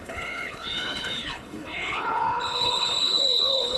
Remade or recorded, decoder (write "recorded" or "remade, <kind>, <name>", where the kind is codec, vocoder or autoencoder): remade, codec, HILCodec